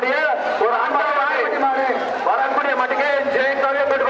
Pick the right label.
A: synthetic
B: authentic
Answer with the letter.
B